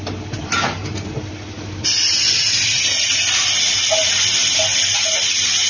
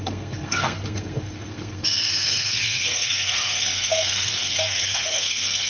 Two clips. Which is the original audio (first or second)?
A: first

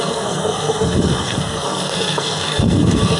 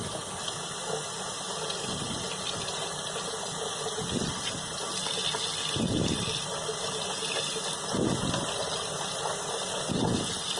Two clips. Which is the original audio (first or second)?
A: second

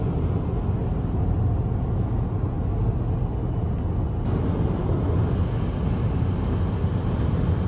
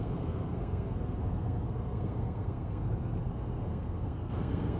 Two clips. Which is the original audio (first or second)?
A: first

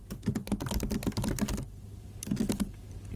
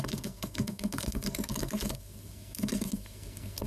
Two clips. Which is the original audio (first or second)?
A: first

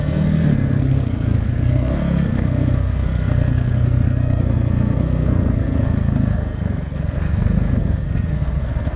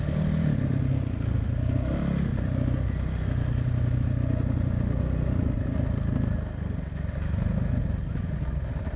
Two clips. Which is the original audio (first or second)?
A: second